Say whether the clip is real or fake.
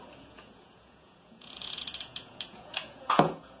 fake